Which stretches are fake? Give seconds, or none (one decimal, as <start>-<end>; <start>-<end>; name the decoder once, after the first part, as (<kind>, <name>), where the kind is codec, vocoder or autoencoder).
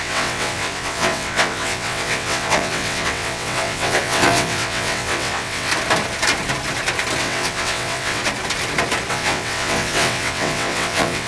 0.0-5.7 (vocoder, WaveNeXt); 7.2-8.2; 9.1-11.3